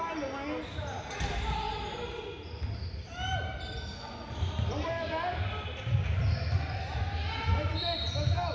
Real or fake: real